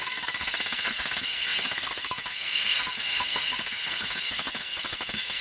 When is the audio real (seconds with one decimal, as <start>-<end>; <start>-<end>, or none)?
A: none